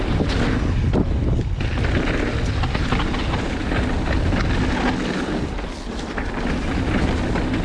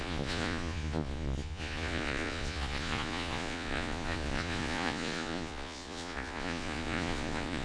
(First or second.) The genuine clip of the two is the first